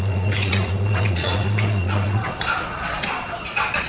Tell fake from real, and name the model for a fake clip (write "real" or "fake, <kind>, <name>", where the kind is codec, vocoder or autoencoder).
fake, vocoder, Vocos